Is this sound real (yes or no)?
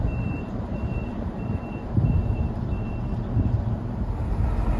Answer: no